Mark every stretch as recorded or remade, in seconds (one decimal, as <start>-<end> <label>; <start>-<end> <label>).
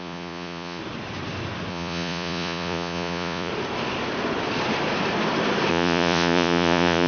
0.0-0.8 remade; 0.8-1.7 recorded; 1.7-3.5 remade; 3.5-5.7 recorded; 5.7-7.1 remade